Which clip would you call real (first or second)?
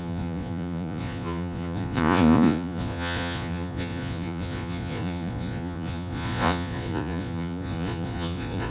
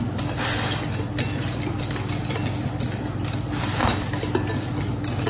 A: second